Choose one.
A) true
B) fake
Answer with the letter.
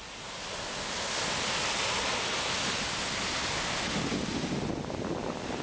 A